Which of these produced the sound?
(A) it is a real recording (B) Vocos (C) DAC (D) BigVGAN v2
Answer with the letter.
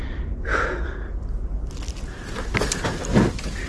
A